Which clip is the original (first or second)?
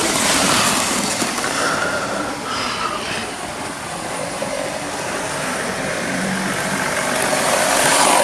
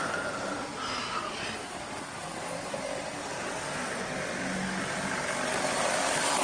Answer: second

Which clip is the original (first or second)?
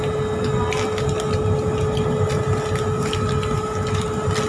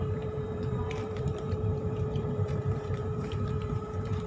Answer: first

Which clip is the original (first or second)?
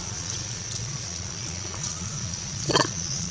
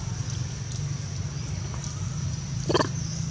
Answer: second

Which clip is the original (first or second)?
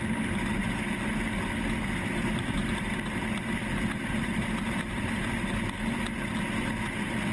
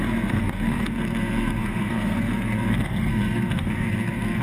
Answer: first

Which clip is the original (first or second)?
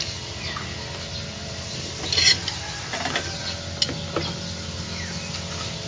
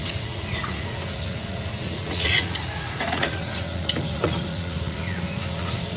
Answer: first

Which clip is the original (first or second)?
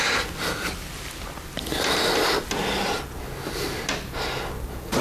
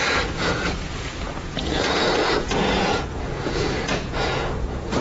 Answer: first